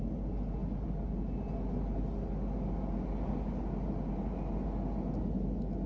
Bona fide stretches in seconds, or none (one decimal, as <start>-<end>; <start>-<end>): 0.0-5.9